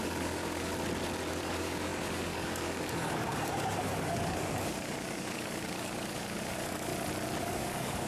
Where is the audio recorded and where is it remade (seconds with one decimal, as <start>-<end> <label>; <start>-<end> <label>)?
0.0-0.7 remade; 0.7-1.3 recorded; 1.3-6.9 remade; 6.9-7.4 recorded; 7.4-8.1 remade